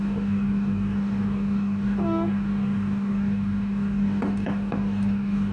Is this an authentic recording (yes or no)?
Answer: no